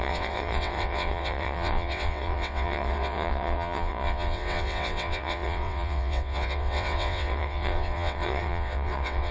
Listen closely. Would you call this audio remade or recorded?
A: remade